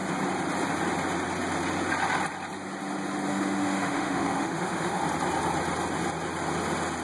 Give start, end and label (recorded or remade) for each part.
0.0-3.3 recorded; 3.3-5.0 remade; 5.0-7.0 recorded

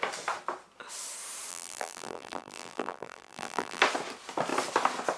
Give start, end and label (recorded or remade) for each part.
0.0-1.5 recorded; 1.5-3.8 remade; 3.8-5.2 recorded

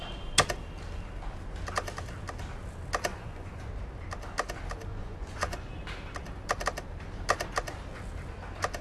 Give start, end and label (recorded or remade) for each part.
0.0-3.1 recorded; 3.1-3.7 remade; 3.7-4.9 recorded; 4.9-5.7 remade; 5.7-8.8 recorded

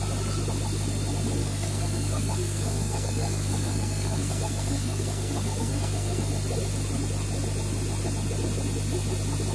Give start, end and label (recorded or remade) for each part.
0.0-1.4 recorded; 1.4-6.3 remade; 6.3-9.5 recorded

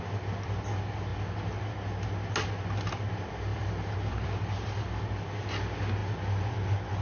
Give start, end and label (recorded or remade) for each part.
0.0-3.5 recorded; 3.5-5.2 remade; 5.2-7.0 recorded

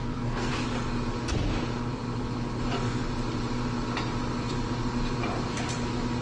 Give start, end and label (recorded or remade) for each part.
0.0-0.5 remade; 0.5-6.2 recorded

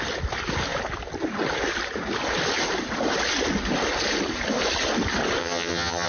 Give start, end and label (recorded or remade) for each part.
0.0-5.4 recorded; 5.4-6.1 remade